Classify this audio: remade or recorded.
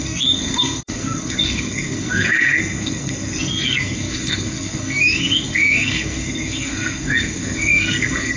remade